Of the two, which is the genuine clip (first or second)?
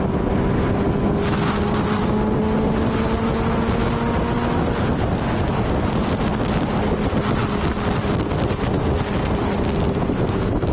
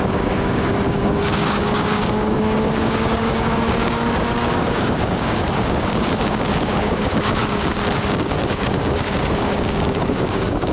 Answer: first